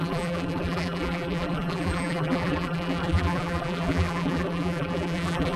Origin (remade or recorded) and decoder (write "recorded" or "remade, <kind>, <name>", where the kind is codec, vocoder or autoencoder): remade, vocoder, BigVGAN v2